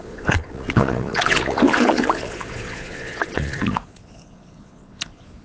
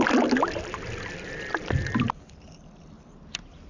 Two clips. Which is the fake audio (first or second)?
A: first